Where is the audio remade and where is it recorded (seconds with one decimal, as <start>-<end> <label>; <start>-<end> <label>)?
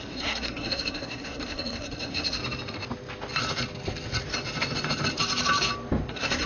0.0-2.4 remade; 2.4-6.1 recorded; 6.1-6.5 remade